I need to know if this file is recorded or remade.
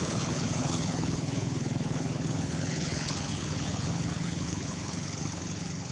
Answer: remade